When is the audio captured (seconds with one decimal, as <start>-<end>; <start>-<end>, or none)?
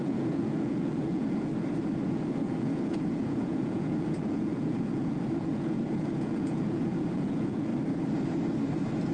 1.5-2.1; 7.7-9.1